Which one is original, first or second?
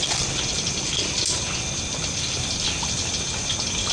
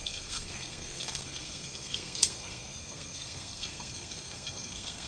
first